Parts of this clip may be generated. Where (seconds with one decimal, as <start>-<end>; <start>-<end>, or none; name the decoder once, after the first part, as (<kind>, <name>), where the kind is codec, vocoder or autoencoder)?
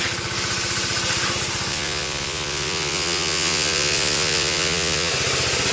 1.7-5.1 (vocoder, Vocos)